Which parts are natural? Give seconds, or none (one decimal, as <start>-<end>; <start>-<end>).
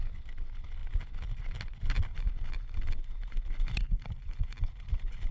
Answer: 0.0-2.1